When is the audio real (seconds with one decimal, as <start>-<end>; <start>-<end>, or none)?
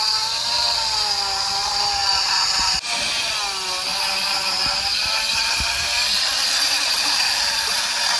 0.0-8.2